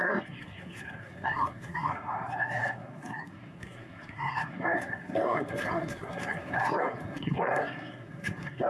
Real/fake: fake